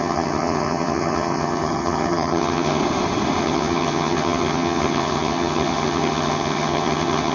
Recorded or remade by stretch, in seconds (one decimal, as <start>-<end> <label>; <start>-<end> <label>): 0.0-2.8 remade; 2.8-3.4 recorded; 3.4-7.3 remade